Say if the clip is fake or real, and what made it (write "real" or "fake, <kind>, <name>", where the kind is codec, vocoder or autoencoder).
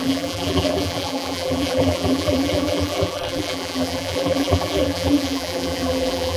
fake, vocoder, BigVGAN v2